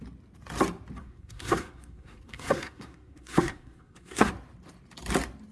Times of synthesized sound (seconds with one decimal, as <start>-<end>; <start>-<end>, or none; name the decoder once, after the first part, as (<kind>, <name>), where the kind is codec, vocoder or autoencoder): 1.0-4.3 (codec, SNAC)

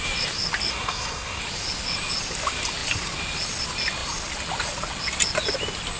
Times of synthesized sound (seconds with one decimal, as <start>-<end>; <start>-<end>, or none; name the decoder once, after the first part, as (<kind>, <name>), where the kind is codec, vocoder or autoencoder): 0.7-1.4 (codec, SNAC)